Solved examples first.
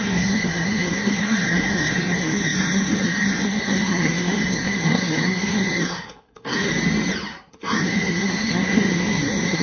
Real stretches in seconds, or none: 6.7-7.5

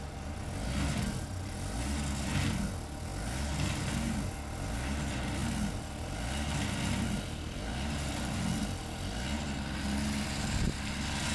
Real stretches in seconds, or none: 0.0-11.3

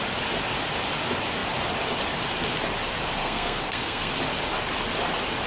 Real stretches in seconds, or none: 0.0-3.2; 4.1-5.5

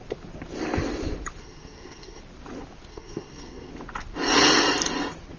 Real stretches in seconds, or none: 0.0-1.4; 2.2-2.9; 3.7-5.4